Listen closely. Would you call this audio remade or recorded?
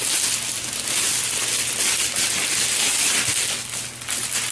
recorded